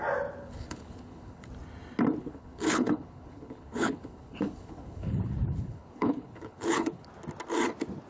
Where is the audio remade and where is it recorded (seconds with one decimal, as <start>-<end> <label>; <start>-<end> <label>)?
0.0-0.4 recorded; 0.4-1.5 remade; 1.5-2.2 recorded; 2.2-7.1 remade; 7.1-8.1 recorded